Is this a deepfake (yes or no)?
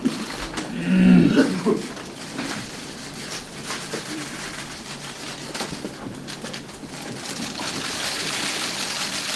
yes